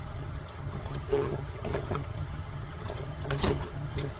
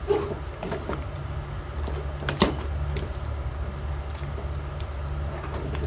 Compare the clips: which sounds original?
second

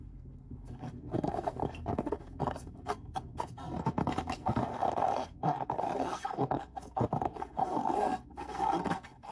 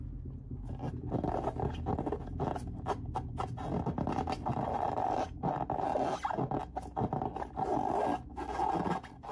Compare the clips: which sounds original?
second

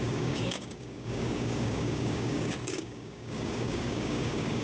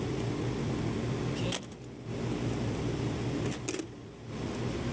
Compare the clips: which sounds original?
second